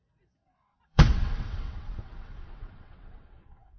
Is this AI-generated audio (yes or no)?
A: yes